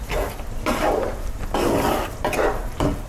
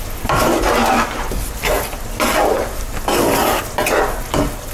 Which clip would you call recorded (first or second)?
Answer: second